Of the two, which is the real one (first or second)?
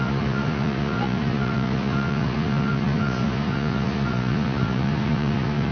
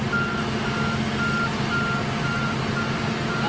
second